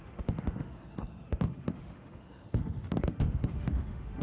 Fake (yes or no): yes